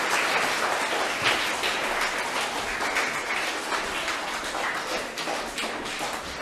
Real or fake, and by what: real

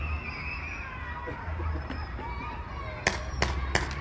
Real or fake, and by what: real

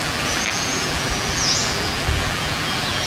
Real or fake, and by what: fake, vocoder, BigVGAN v2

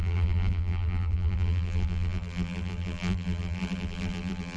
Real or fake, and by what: fake, vocoder, BigVGAN v2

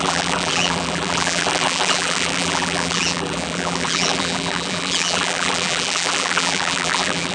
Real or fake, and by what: fake, vocoder, BigVGAN v2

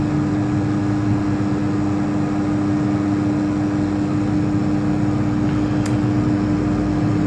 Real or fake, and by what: real